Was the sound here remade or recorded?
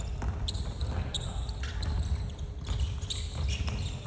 recorded